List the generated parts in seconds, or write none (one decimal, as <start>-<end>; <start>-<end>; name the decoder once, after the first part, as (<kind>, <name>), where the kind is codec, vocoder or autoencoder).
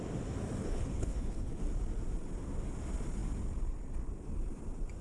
0.6-1.6 (codec, HILCodec)